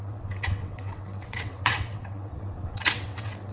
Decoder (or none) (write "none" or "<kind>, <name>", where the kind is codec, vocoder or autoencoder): vocoder, WaveNeXt